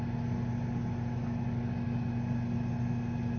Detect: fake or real real